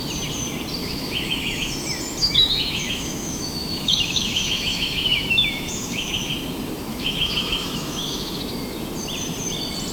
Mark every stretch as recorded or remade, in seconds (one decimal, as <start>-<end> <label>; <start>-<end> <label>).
0.0-0.8 recorded; 0.8-1.7 remade; 1.7-2.2 recorded; 2.2-6.3 remade; 6.3-6.9 recorded; 6.9-8.4 remade; 8.4-9.9 recorded